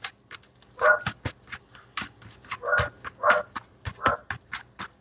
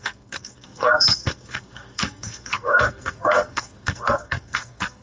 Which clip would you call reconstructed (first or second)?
second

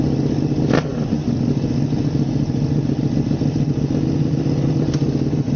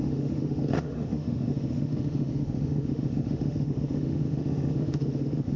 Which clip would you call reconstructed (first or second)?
second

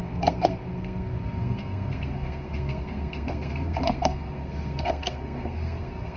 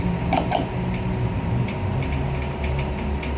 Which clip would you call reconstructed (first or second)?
first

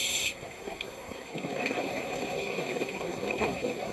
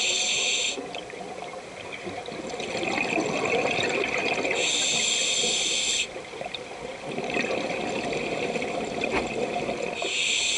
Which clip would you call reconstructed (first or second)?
first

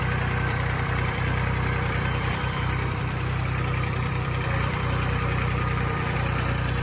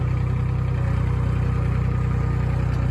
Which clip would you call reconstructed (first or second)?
first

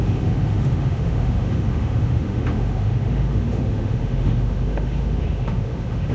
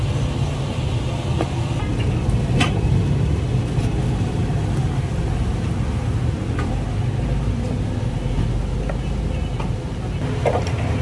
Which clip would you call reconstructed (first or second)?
first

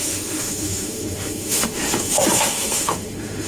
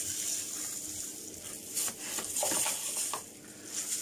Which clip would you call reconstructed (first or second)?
first